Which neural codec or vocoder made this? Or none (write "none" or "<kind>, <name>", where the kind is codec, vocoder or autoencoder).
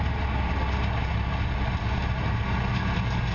none